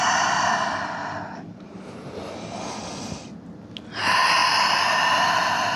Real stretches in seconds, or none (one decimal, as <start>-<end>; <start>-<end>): 0.0-1.0; 2.3-5.8